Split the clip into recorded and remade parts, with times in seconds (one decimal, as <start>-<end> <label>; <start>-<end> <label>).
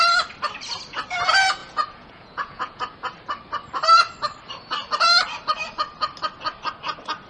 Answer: 0.0-1.6 recorded; 1.6-2.8 remade; 2.8-7.3 recorded